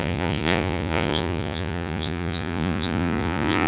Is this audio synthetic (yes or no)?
yes